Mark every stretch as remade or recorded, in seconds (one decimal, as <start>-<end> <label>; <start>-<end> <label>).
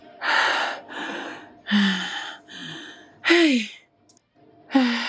0.0-5.1 recorded